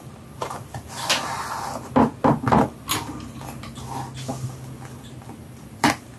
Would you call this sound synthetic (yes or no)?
no